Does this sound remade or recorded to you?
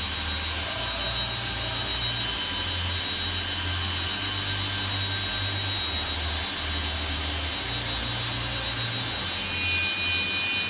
recorded